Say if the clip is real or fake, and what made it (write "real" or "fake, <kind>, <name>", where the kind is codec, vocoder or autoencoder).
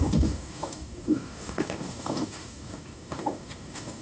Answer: fake, codec, DAC